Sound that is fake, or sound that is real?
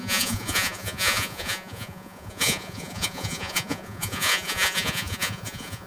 fake